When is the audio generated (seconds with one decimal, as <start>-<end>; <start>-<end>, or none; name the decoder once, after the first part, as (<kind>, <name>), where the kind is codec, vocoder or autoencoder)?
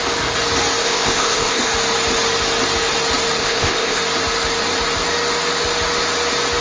0.8-1.7 (codec, ZipCodec); 3.4-4.0